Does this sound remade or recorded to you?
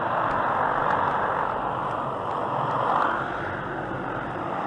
recorded